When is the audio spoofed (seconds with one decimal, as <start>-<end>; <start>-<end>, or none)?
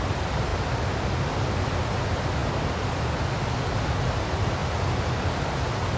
none